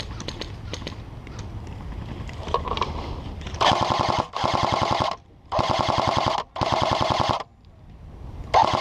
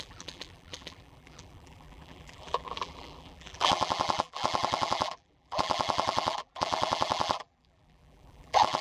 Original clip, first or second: first